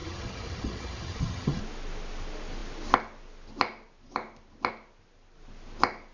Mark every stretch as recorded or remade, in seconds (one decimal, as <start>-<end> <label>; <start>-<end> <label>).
0.0-1.6 remade; 1.6-6.1 recorded